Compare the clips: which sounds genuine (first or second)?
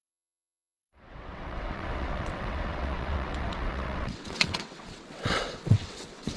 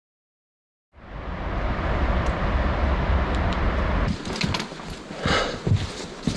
second